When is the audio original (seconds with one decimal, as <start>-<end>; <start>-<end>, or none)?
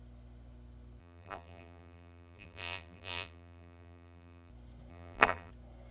0.0-1.0; 4.5-4.9; 5.5-5.9